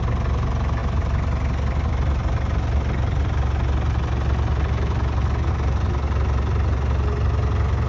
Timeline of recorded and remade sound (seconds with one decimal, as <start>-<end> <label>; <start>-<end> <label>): 0.0-7.9 recorded